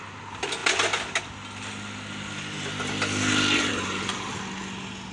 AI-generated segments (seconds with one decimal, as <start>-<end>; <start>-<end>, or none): none